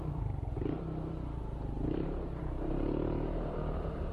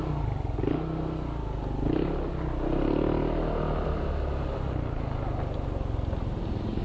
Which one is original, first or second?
second